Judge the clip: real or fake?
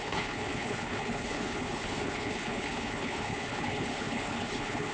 fake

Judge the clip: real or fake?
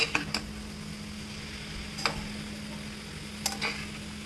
real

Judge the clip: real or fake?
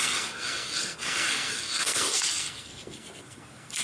fake